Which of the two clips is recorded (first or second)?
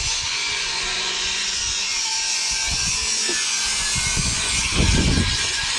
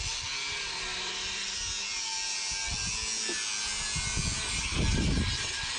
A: second